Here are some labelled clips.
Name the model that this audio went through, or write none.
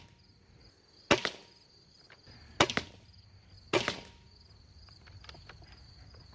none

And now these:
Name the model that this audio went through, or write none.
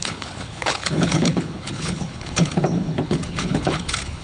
codec, HILCodec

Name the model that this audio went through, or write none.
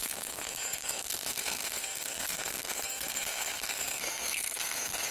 codec, SNAC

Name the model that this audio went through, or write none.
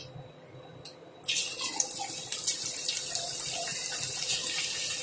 none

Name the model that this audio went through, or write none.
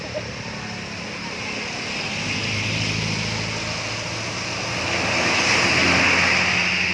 none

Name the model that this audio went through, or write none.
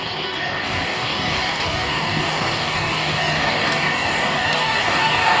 codec, DAC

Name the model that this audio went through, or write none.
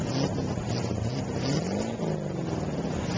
none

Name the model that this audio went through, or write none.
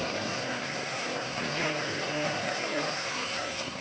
codec, SNAC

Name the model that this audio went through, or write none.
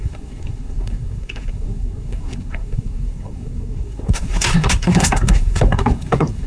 codec, SNAC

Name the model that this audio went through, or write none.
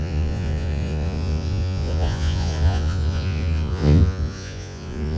vocoder, Vocos